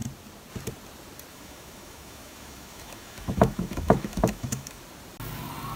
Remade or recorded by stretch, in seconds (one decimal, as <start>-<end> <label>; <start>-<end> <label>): 0.0-1.3 recorded; 1.3-4.8 remade; 4.8-5.8 recorded